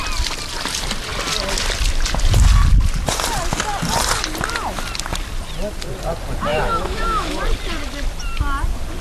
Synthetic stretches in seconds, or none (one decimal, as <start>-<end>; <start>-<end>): 6.5-7.4